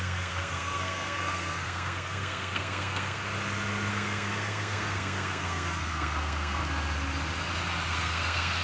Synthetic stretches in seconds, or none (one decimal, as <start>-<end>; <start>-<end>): 0.0-3.2; 3.9-6.6; 7.9-8.6